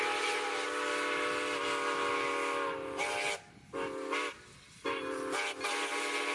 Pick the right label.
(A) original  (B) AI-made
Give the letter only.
A